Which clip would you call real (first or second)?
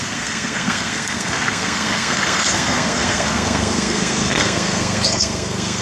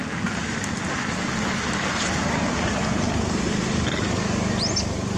second